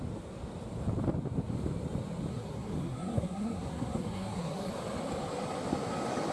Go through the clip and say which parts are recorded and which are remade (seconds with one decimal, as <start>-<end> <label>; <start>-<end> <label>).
0.0-2.3 recorded; 2.3-4.7 remade; 4.7-6.3 recorded